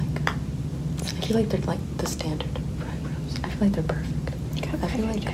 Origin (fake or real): real